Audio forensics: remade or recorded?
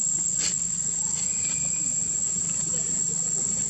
recorded